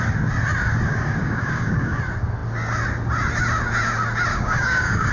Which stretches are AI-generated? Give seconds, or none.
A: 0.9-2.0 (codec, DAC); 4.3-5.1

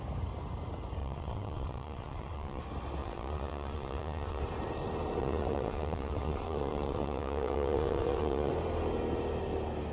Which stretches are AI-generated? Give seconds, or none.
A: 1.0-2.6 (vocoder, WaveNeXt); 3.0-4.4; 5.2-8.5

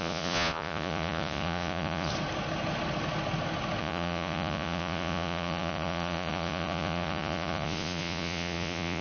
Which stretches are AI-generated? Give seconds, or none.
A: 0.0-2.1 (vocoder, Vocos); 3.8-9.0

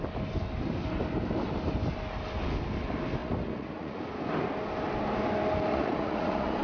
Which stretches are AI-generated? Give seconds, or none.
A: 3.2-4.0 (vocoder, Vocos); 5.7-6.6

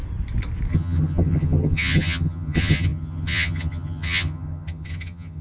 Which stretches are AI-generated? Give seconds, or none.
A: 0.7-5.4 (vocoder, HiFi-GAN)

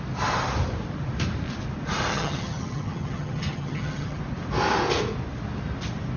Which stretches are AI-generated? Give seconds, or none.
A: 2.1-4.2 (vocoder, HiFi-GAN)

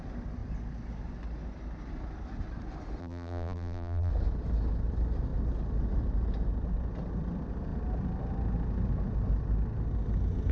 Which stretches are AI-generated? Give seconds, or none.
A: 3.0-4.1 (vocoder, BigVGAN v2)